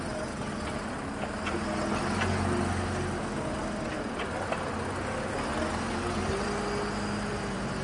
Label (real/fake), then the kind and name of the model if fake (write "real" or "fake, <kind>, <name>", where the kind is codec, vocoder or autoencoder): real